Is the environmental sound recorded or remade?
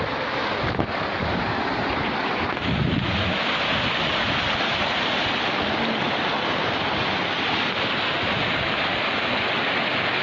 recorded